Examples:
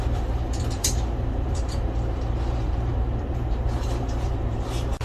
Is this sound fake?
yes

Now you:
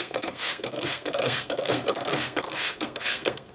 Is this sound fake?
yes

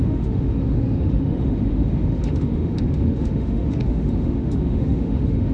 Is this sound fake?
yes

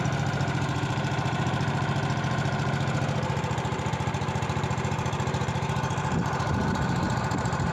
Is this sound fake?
yes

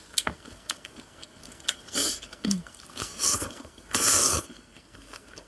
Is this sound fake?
yes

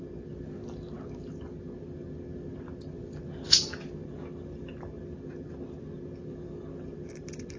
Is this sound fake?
no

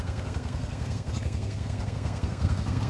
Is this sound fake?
yes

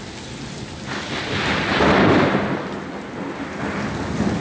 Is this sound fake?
no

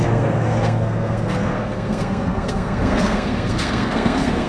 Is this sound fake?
yes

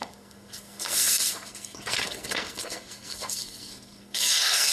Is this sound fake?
yes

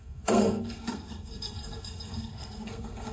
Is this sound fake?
yes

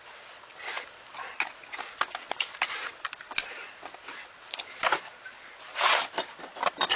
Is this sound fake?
no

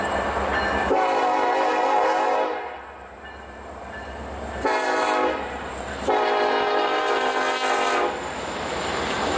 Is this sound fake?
yes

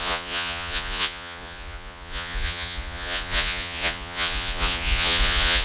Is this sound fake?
yes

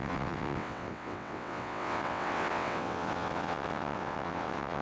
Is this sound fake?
yes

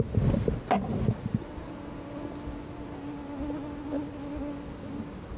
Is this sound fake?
no